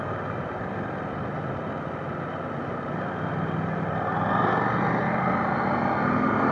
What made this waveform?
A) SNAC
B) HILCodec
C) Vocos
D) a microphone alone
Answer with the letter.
D